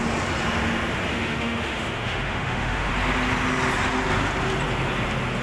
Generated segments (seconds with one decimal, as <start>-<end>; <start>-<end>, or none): 1.1-2.9